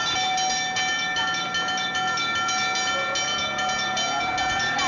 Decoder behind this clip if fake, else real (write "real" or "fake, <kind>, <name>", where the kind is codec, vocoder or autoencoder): real